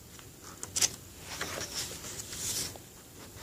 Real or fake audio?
real